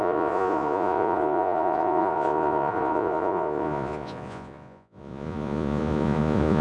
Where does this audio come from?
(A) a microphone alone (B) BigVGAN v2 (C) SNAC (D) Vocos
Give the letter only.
D